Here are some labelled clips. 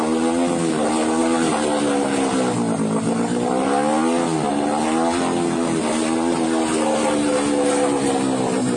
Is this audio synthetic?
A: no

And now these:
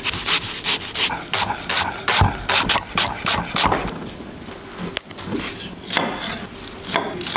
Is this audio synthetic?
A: no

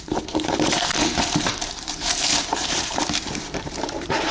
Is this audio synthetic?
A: yes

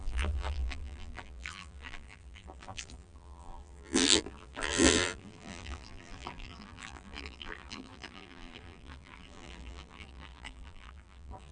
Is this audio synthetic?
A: yes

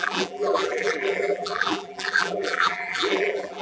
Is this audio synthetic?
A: yes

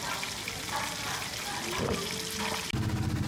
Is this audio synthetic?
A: no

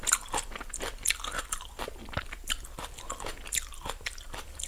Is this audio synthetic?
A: yes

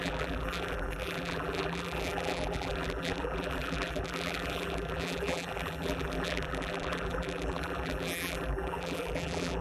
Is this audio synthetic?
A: yes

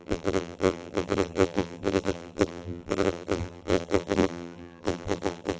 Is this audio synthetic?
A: yes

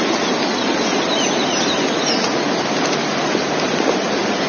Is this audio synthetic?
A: no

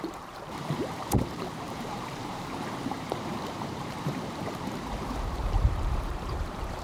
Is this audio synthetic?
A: yes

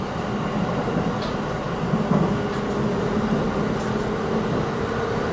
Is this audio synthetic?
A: no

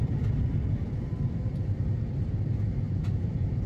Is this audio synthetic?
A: yes